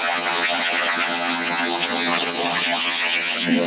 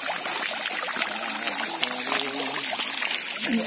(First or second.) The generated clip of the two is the first